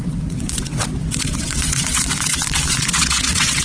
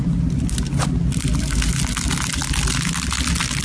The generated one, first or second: first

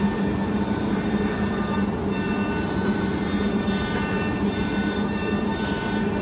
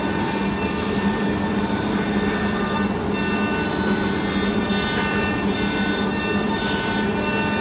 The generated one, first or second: first